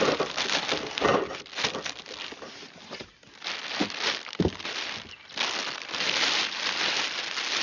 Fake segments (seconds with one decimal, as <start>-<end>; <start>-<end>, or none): none